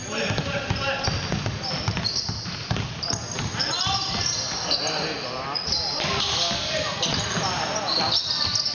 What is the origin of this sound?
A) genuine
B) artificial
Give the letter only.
B